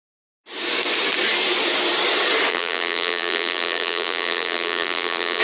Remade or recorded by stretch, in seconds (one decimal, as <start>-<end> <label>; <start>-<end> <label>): 0.0-2.5 recorded; 2.5-5.4 remade